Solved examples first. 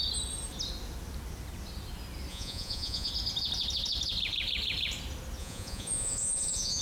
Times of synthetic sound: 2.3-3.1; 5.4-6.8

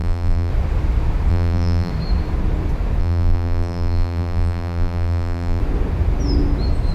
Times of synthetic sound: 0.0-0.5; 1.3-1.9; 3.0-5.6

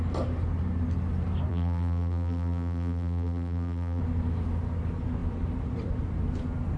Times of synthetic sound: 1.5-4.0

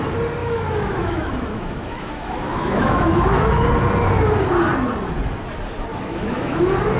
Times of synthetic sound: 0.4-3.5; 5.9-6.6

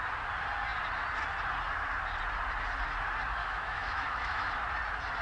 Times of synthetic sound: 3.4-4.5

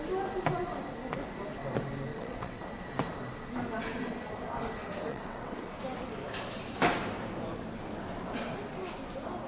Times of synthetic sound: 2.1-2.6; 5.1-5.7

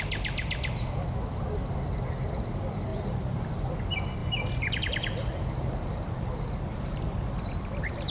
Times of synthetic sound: 2.9-3.7; 4.2-8.1